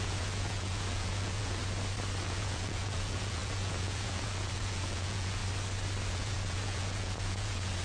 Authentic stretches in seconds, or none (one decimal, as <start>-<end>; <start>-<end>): 1.6-2.2; 5.4-6.1